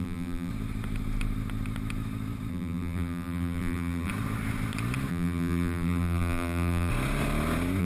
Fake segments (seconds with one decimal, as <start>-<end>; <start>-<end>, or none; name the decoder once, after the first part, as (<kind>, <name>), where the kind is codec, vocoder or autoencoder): 0.0-0.5 (vocoder, BigVGAN v2); 2.5-4.1; 5.1-6.9